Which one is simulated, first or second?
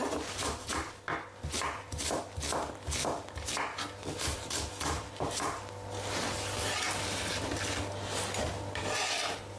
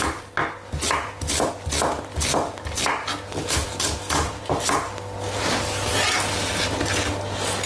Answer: first